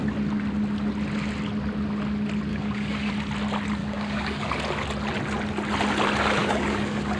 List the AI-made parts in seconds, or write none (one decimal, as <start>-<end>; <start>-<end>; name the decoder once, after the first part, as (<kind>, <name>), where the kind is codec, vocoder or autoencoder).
2.5-3.1 (codec, DAC); 3.8-4.5; 6.4-7.2